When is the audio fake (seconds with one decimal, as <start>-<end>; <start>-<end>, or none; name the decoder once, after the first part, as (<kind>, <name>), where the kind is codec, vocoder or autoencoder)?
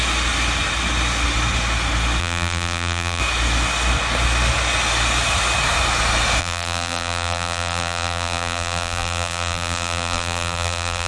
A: 2.2-3.2 (vocoder, BigVGAN v2); 6.4-11.1